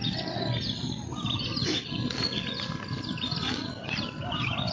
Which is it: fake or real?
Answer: fake